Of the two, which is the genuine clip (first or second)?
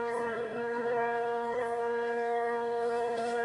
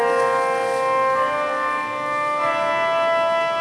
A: second